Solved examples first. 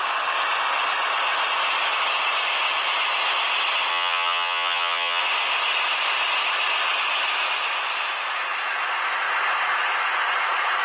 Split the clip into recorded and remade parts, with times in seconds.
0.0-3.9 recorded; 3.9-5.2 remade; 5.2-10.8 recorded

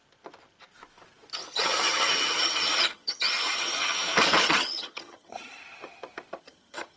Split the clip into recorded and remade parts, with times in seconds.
0.0-1.5 recorded; 1.5-3.8 remade; 3.8-4.5 recorded; 4.5-5.6 remade; 5.6-6.4 recorded; 6.4-7.0 remade

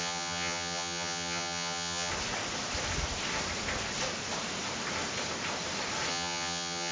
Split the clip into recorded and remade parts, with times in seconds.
0.0-2.1 remade; 2.1-6.1 recorded; 6.1-6.9 remade

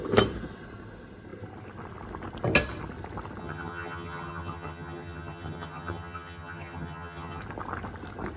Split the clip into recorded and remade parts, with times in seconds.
0.0-3.4 recorded; 3.4-7.4 remade; 7.4-8.4 recorded

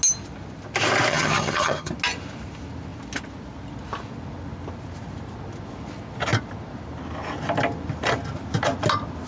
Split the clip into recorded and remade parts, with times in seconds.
0.0-1.1 recorded; 1.1-1.9 remade; 1.9-9.3 recorded